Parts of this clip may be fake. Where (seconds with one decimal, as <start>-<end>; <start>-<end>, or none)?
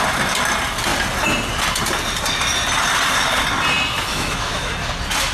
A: 4.1-4.7